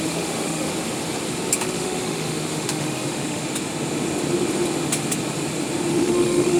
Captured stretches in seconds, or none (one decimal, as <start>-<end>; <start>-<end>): 0.7-1.6; 3.4-5.9